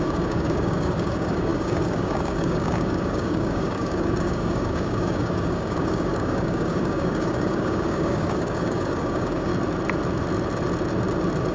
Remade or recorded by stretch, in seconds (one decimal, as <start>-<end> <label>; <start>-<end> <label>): 0.0-9.5 remade; 9.5-11.5 recorded